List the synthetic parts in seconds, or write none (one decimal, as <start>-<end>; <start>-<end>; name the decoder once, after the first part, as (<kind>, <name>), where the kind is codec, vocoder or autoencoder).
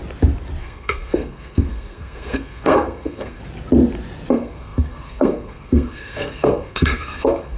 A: 0.6-3.4 (codec, SNAC); 4.3-7.6